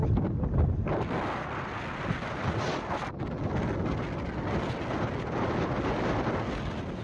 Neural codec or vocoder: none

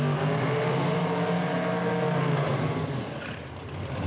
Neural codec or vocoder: none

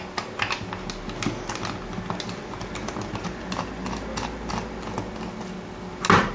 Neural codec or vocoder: none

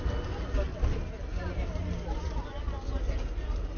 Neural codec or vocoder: none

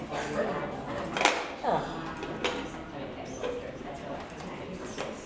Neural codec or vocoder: none